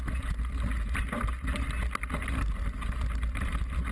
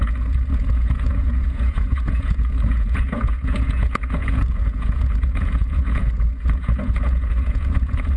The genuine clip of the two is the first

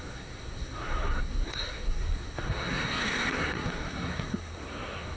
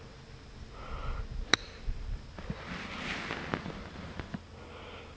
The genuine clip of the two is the second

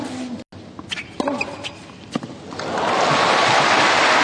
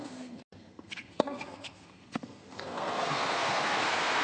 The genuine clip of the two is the first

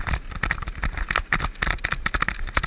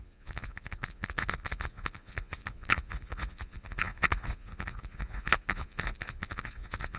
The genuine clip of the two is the first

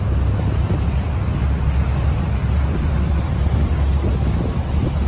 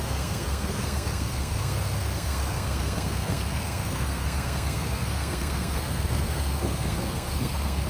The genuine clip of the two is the first